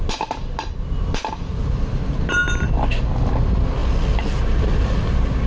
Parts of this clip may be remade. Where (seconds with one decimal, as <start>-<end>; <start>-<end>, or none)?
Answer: none